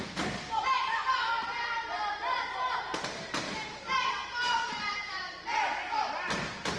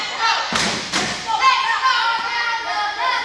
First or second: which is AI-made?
first